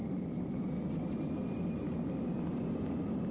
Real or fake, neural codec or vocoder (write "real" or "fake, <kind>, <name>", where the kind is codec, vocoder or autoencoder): real